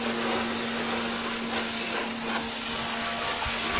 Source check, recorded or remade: recorded